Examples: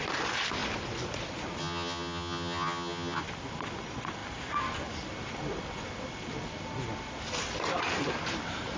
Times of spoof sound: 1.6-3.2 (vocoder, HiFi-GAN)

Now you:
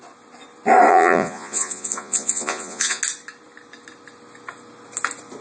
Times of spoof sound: 0.9-3.0 (vocoder, Vocos)